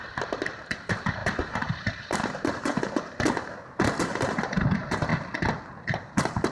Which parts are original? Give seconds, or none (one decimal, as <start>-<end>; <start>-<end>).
2.7-4.0; 5.1-6.5